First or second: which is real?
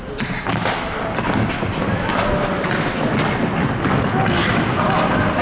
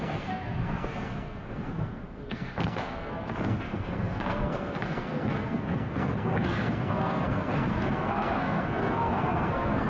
first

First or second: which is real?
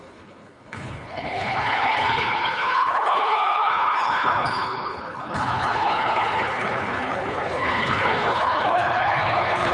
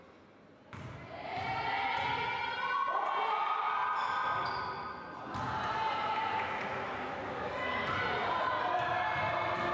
second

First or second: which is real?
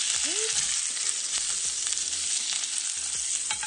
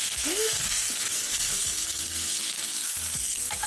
first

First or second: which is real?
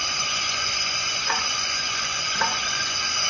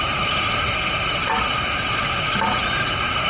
second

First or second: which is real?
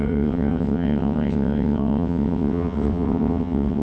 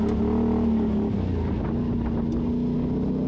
second